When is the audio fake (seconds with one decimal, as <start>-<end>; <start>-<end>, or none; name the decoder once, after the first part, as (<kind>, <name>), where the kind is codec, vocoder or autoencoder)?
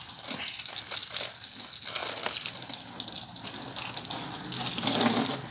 none